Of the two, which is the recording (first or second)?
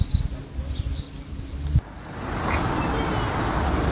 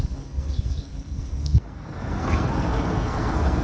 first